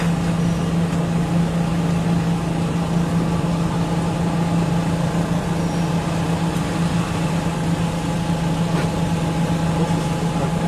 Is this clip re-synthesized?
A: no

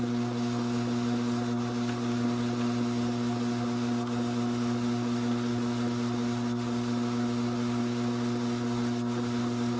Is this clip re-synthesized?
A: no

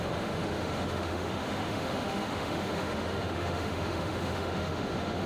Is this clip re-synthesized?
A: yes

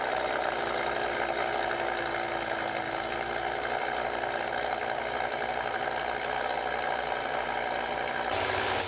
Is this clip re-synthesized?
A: no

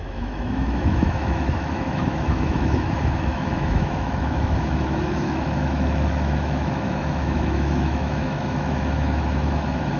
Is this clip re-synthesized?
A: yes